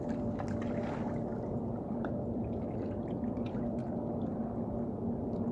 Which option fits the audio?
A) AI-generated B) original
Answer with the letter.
B